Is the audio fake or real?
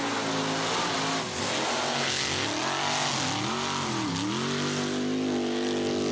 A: real